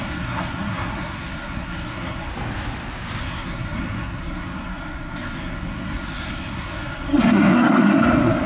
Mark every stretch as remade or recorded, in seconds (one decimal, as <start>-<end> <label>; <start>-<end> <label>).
0.0-2.3 remade; 2.3-3.2 recorded; 3.2-8.5 remade